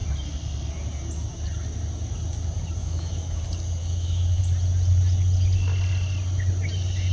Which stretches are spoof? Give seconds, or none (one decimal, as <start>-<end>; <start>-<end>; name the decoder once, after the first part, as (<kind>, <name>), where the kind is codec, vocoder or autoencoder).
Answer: 2.8-3.4 (autoencoder, DAC-VAE); 3.8-4.4